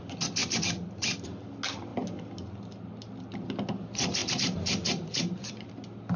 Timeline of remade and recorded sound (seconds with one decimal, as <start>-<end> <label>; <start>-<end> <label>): 0.0-0.4 recorded; 0.4-1.5 remade; 1.5-4.2 recorded; 4.2-5.7 remade; 5.7-6.2 recorded